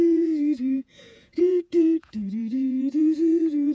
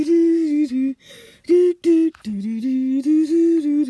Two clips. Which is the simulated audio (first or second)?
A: first